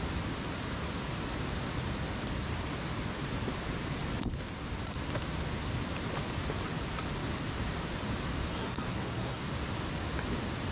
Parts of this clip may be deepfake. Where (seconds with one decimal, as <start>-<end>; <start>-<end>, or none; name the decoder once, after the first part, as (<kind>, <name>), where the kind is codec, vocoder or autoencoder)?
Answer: 8.5-9.4 (codec, SNAC)